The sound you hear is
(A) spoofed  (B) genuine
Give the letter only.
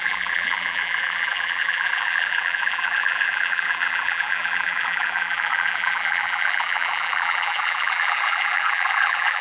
A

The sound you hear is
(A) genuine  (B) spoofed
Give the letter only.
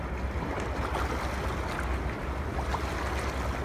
A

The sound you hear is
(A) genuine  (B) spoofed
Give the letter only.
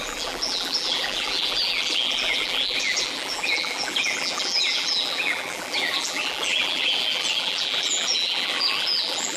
B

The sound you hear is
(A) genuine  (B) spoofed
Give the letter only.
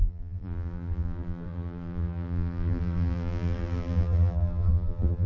B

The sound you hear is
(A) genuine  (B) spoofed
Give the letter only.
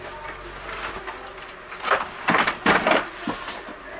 A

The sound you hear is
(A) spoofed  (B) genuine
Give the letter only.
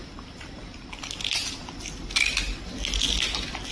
B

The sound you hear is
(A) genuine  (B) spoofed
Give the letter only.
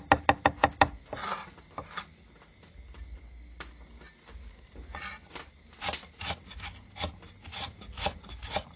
A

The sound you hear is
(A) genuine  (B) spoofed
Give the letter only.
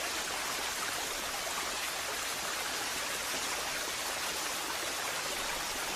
A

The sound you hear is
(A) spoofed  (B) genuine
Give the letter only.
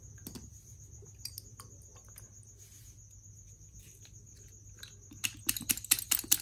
B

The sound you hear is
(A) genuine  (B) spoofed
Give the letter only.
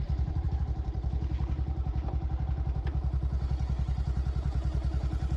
B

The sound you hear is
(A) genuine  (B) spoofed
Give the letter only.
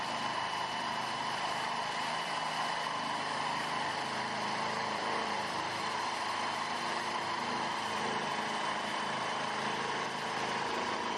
B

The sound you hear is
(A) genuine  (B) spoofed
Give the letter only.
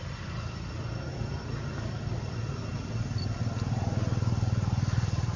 A